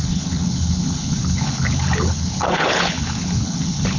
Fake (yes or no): yes